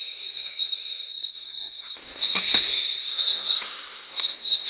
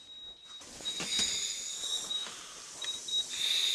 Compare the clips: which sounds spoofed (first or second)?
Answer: first